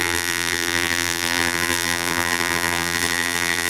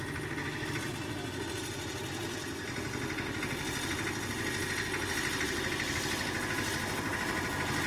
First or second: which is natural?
second